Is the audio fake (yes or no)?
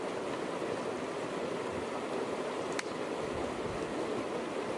no